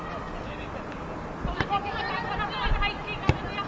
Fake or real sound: real